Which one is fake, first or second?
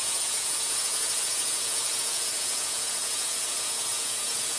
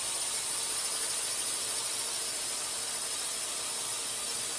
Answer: first